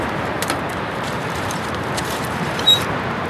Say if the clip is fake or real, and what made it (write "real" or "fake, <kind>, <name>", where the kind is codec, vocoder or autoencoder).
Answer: fake, vocoder, BigVGAN v2